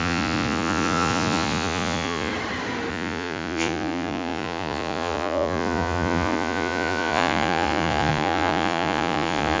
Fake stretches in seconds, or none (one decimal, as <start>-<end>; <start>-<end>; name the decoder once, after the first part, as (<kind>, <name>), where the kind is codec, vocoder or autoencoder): 0.0-2.3 (vocoder, Vocos); 2.9-9.6